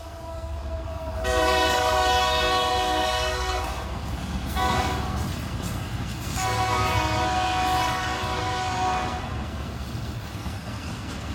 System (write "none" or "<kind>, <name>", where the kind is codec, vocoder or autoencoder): codec, SNAC